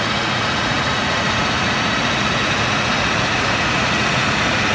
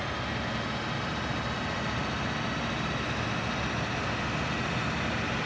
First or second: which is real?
second